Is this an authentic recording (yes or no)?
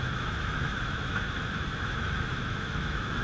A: no